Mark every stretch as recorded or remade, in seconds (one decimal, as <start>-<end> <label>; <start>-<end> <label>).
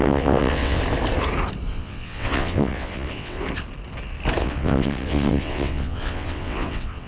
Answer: 0.0-0.8 remade; 0.8-1.7 recorded; 1.7-3.4 remade; 3.4-4.4 recorded; 4.4-7.1 remade